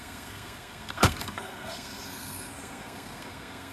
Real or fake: fake